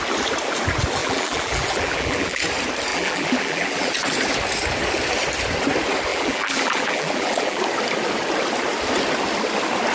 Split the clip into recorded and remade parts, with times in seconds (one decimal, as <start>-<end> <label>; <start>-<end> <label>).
0.0-1.0 recorded; 1.0-2.4 remade; 2.4-2.9 recorded; 2.9-3.9 remade; 3.9-6.1 recorded; 6.1-7.6 remade; 7.6-9.9 recorded